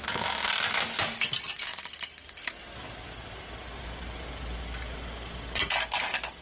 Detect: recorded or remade recorded